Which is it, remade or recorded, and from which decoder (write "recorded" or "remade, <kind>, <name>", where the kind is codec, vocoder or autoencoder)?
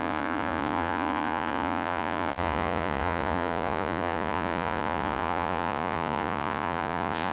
remade, vocoder, Vocos